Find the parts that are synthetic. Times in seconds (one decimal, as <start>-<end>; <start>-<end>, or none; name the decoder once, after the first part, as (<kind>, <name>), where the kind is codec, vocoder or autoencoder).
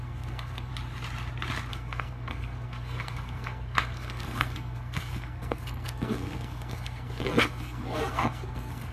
0.0-0.7 (codec, SNAC); 1.7-8.9